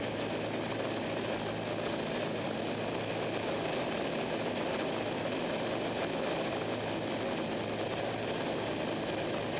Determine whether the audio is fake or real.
real